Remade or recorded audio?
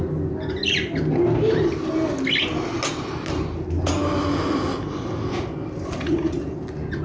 recorded